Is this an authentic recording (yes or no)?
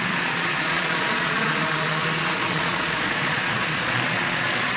no